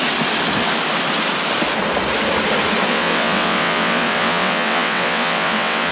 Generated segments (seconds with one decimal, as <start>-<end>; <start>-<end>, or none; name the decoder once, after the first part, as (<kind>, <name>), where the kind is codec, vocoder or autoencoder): 2.9-5.9 (vocoder, WaveNeXt)